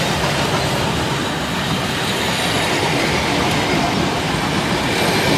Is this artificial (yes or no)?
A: no